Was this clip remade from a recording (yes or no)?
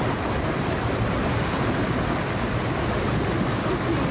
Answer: no